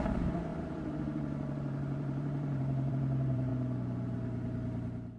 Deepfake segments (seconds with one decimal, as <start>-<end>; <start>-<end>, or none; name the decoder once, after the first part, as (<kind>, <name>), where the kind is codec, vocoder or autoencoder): 0.0-3.5 (vocoder, BigVGAN v2)